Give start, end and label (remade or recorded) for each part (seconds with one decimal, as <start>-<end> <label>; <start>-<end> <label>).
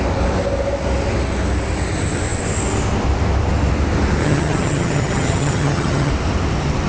0.0-4.2 recorded; 4.2-6.1 remade; 6.1-6.9 recorded